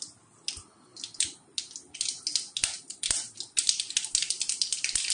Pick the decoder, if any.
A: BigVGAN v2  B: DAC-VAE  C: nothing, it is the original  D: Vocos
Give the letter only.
C